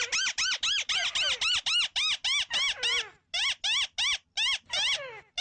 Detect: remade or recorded recorded